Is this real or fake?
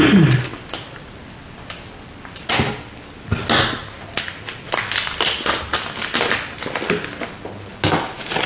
real